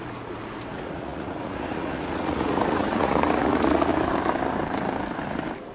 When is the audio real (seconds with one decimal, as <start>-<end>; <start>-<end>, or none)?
3.9-5.7